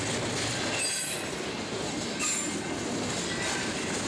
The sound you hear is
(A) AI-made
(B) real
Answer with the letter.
B